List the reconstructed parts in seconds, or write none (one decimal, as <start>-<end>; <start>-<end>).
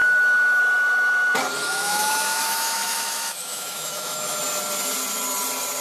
1.7-4.4